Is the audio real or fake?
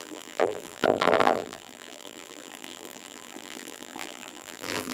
fake